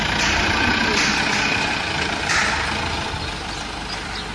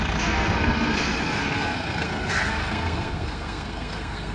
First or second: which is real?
first